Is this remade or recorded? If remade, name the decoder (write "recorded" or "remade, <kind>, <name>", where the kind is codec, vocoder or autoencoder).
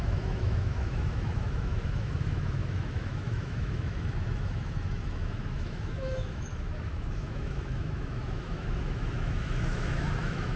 remade, autoencoder, DAC-VAE